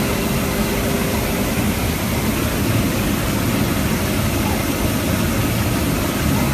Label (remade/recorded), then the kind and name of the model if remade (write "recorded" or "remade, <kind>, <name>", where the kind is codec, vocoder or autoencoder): recorded